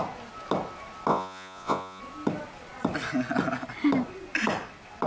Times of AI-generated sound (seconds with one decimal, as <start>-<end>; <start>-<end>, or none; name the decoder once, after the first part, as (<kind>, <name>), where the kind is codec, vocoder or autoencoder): 1.1-2.0 (vocoder, Vocos)